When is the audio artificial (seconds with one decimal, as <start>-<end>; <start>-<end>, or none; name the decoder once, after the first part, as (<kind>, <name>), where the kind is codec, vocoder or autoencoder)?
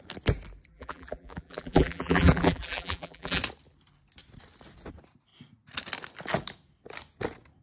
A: 0.7-3.4 (vocoder, BigVGAN v2)